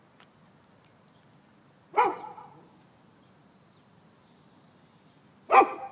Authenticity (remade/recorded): recorded